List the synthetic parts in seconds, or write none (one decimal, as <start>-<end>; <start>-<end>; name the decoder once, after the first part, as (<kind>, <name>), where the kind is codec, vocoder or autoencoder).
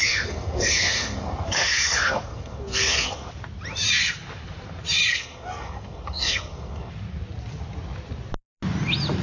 0.0-3.3 (codec, SNAC); 5.1-6.9